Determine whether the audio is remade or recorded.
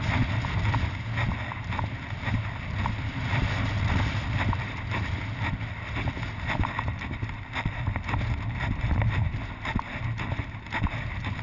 recorded